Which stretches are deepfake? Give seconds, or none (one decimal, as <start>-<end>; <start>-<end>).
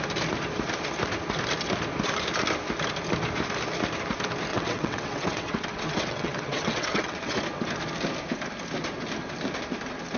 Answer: 4.5-7.4